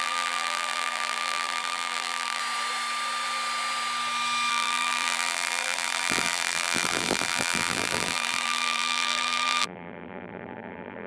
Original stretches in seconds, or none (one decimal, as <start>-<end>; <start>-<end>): 2.4-4.5